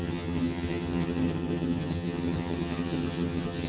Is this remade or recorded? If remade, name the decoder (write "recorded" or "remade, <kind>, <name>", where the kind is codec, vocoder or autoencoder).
remade, vocoder, HiFi-GAN